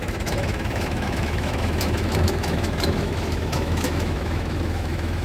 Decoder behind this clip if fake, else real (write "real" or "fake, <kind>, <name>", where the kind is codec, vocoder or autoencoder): fake, autoencoder, DAC-VAE